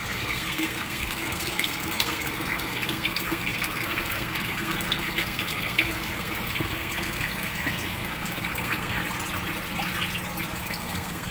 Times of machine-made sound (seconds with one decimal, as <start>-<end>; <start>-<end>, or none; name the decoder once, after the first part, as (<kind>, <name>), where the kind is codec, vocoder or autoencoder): 0.0-9.0 (codec, SNAC); 10.6-11.3